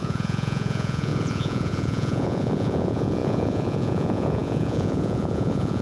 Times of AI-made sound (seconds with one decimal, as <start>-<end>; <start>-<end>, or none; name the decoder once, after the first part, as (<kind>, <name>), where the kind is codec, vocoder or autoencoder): 0.0-5.8 (vocoder, Vocos)